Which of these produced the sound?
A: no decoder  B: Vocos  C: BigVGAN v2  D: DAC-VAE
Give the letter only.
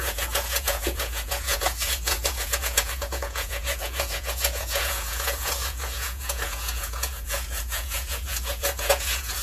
B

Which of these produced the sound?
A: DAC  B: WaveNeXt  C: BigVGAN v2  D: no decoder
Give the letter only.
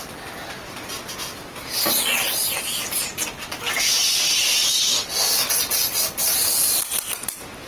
D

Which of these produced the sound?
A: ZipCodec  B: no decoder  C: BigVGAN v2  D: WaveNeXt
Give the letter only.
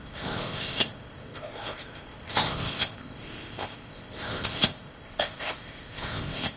A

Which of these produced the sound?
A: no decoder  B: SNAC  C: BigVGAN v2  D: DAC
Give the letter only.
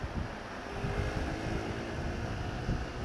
A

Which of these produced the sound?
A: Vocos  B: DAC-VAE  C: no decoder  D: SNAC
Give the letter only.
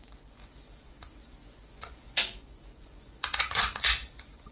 A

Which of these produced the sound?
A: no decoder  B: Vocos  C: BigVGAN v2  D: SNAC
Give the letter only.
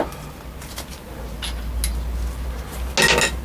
A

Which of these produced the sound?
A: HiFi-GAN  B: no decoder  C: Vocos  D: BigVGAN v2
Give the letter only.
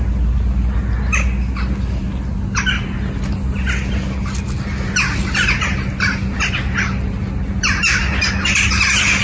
B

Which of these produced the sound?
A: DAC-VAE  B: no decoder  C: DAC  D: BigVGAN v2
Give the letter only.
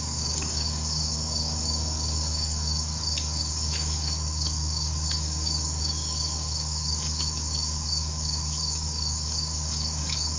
C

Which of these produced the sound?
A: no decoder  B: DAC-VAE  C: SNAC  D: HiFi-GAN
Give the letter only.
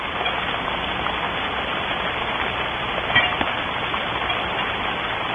A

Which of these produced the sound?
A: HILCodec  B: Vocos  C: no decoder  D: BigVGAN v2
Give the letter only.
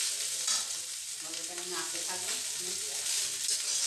C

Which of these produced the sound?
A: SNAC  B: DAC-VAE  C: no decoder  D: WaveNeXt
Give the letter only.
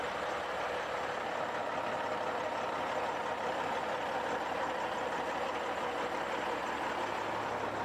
C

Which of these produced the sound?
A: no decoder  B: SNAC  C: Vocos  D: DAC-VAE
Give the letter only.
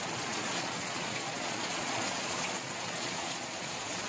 C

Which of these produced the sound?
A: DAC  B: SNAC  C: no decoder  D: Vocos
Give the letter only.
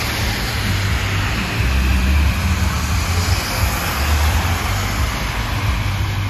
C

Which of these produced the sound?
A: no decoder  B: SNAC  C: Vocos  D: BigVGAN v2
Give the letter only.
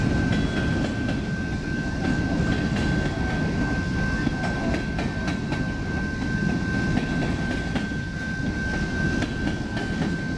A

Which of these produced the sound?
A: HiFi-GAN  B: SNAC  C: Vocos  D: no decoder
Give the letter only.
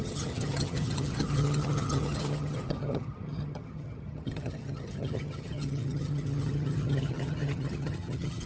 A